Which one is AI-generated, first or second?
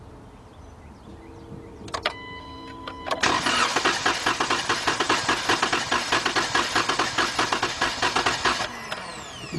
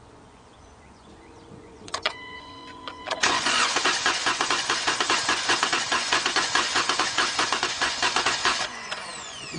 second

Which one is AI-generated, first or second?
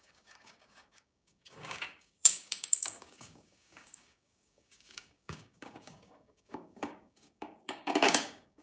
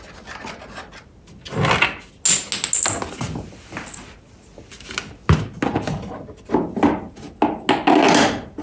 first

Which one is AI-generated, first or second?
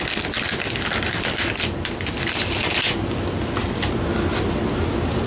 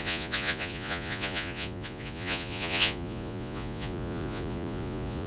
second